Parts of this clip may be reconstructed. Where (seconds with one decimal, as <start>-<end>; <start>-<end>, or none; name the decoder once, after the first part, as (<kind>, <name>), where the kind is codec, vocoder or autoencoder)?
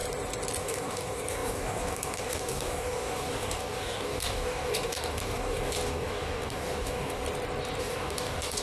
0.6-7.2 (codec, DAC); 7.8-8.6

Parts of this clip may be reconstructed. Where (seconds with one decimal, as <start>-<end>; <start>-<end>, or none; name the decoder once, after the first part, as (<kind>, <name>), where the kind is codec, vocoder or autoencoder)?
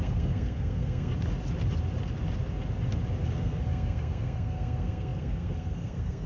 0.0-1.1 (codec, SNAC); 3.3-6.3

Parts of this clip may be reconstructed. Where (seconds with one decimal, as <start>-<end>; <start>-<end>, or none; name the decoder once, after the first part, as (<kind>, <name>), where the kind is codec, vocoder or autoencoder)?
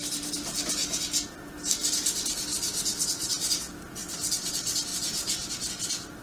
2.5-3.5 (vocoder, BigVGAN v2); 4.0-4.5; 4.9-5.7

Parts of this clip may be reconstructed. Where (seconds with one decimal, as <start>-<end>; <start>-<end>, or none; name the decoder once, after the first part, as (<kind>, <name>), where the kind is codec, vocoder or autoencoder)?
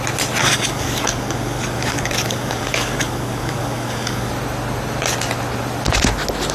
0.4-4.3 (codec, DAC)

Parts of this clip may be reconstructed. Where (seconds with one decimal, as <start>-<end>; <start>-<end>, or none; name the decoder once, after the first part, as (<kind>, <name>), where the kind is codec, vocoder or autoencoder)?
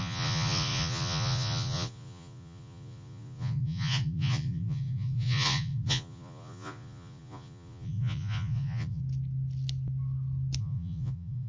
0.0-9.0 (vocoder, Vocos); 10.6-11.5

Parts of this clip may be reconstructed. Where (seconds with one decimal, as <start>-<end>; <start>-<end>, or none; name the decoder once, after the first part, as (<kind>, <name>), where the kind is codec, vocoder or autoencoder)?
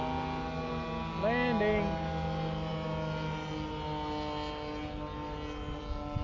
none